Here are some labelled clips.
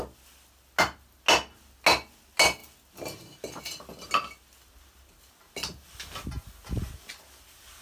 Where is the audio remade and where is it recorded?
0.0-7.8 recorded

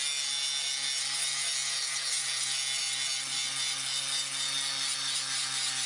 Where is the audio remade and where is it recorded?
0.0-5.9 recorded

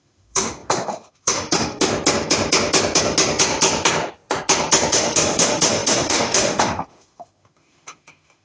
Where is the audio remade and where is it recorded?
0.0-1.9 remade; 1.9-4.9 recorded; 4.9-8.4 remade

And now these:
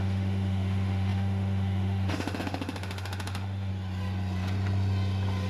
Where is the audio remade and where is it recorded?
0.0-3.7 remade; 3.7-5.5 recorded

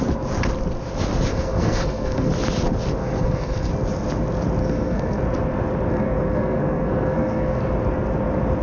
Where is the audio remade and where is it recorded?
0.0-1.3 recorded; 1.3-2.3 remade; 2.3-3.0 recorded; 3.0-3.7 remade; 3.7-4.6 recorded; 4.6-5.2 remade; 5.2-5.9 recorded; 5.9-7.6 remade; 7.6-8.6 recorded